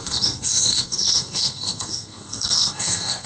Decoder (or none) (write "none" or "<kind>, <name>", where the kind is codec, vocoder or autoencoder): codec, SNAC